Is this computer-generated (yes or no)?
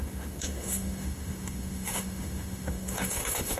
yes